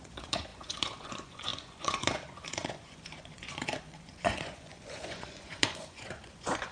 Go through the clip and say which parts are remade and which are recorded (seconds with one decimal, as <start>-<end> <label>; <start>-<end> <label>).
0.0-6.7 remade